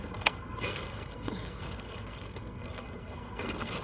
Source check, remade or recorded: remade